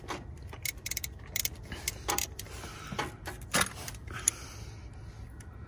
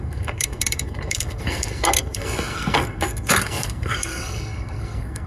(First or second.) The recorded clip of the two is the first